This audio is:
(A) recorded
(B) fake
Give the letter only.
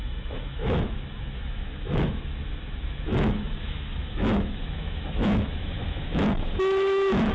B